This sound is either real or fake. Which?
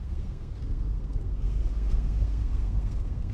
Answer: fake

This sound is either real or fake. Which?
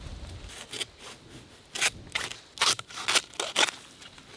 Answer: real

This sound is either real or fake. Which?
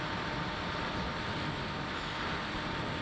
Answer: real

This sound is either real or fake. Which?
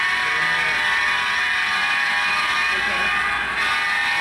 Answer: real